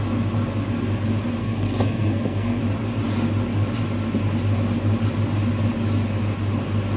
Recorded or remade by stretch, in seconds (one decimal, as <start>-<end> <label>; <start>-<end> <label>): 0.0-1.4 recorded; 1.4-2.6 remade; 2.6-7.0 recorded